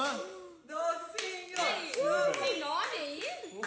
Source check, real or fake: real